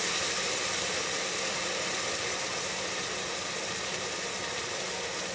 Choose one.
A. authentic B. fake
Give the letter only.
A